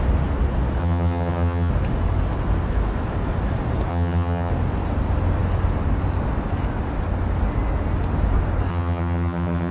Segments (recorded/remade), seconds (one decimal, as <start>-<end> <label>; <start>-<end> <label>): 0.0-0.8 recorded; 0.8-1.7 remade; 1.7-3.9 recorded; 3.9-4.5 remade; 4.5-8.7 recorded; 8.7-9.7 remade